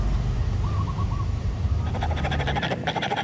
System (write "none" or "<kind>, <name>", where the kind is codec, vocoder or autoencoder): none